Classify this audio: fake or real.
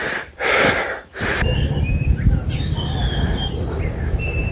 real